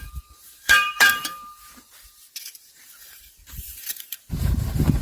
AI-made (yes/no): yes